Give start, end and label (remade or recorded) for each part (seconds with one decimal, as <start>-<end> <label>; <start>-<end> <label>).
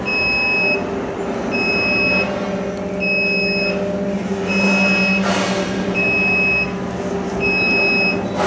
0.0-8.5 recorded